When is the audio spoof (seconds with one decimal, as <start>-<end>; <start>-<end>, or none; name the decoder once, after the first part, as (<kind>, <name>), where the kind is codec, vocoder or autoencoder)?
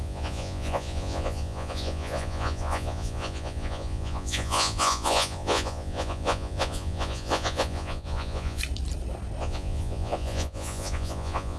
0.0-8.6 (vocoder, Vocos); 9.4-11.6